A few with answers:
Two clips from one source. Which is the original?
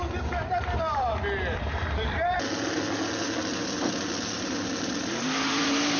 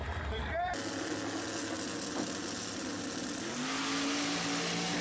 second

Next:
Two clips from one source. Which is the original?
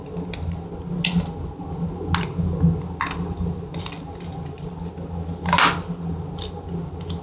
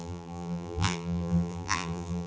first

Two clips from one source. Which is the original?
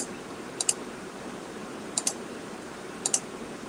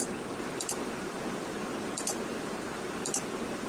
second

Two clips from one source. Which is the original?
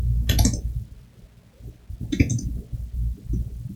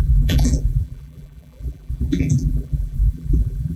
first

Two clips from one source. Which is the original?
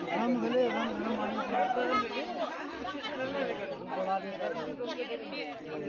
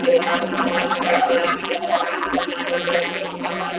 first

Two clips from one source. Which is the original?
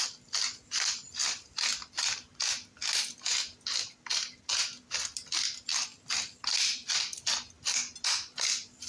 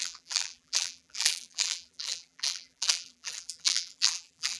first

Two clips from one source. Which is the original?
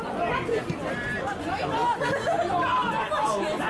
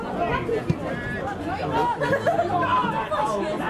second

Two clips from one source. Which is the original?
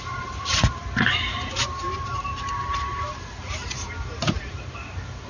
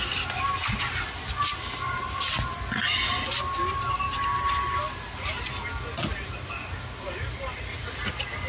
second